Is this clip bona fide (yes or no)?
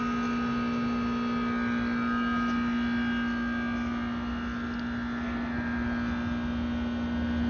yes